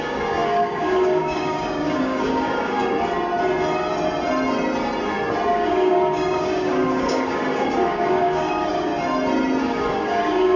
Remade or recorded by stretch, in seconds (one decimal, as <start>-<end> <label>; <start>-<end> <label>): 0.0-2.8 remade; 2.8-5.5 recorded; 5.5-8.9 remade; 8.9-9.6 recorded; 9.6-10.6 remade